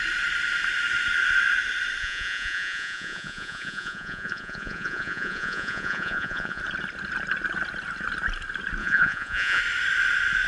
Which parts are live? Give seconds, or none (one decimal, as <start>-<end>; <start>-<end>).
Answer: 0.0-2.0; 6.6-8.8; 9.6-10.5